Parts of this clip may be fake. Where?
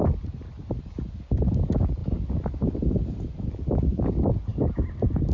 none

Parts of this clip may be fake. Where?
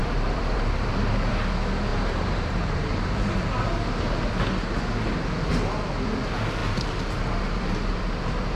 0.0-1.5 (vocoder, BigVGAN v2); 1.9-4.3; 6.6-8.6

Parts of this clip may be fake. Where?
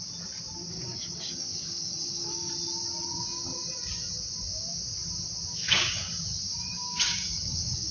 0.7-2.5 (codec, DAC); 5.6-6.1; 6.5-7.9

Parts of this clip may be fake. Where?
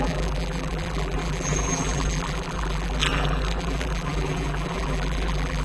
0.0-5.6 (vocoder, BigVGAN v2)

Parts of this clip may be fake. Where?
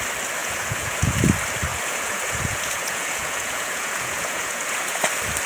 0.4-1.2 (vocoder, Vocos); 1.7-5.0